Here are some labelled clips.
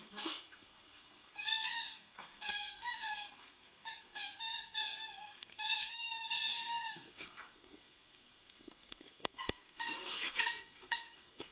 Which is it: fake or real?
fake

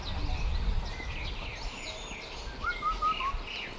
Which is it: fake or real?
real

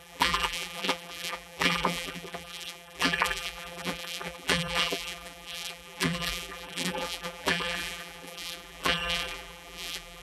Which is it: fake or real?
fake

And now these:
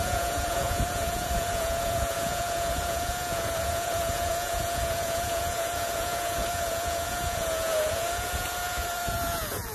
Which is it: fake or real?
fake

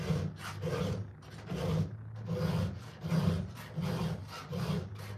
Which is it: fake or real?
real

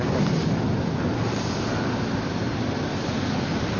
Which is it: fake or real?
real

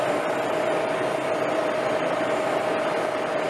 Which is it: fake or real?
real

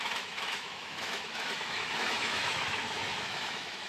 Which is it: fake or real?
fake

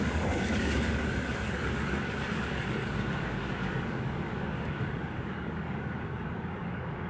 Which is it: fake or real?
fake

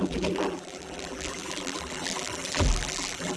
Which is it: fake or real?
fake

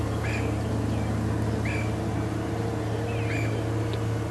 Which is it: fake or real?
real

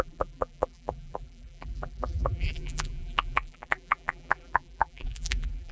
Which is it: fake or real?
fake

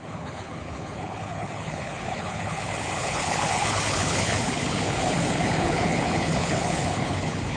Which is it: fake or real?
fake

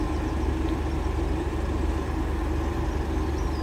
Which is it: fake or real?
real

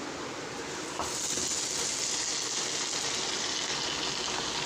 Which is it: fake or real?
real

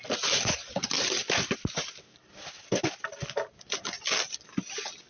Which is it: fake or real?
real